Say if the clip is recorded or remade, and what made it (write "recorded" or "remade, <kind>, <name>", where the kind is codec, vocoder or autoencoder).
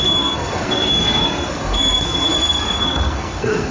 remade, codec, SNAC